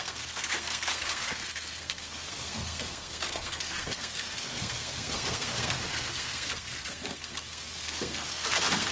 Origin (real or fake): fake